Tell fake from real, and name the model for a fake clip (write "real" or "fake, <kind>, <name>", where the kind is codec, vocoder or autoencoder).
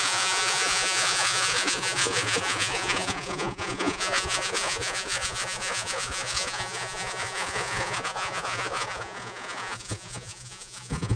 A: fake, vocoder, Vocos